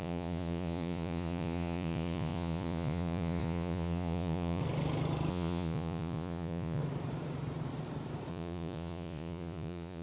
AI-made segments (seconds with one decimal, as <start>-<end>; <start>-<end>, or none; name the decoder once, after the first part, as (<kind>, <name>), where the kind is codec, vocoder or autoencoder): 0.0-4.6 (vocoder, Vocos); 5.3-6.8; 8.3-10.0